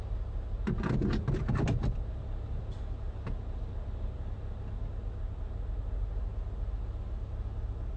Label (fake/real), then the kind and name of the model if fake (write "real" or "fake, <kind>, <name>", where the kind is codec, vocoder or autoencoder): real